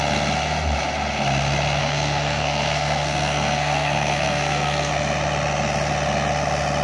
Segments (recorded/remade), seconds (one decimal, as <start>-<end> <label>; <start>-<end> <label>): 0.0-1.8 recorded; 1.8-4.9 remade; 4.9-6.8 recorded